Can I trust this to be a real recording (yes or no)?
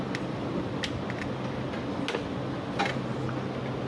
yes